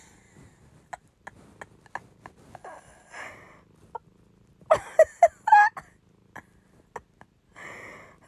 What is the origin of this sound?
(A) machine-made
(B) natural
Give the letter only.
B